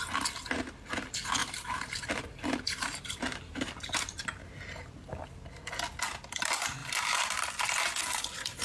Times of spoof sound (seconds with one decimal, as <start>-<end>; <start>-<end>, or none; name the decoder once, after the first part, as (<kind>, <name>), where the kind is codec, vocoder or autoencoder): 1.4-4.6 (vocoder, BigVGAN v2); 6.8-7.5